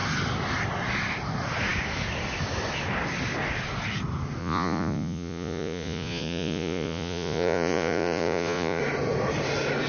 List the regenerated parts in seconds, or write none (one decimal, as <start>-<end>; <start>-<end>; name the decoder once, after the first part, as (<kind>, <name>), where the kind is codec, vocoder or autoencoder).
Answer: 4.4-8.8 (vocoder, Vocos)